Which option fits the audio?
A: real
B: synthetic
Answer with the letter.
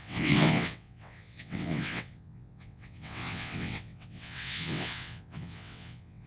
B